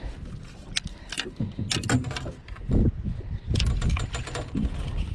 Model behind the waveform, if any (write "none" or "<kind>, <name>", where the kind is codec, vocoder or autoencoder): none